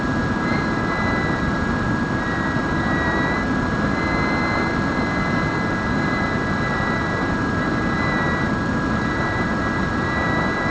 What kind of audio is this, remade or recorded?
recorded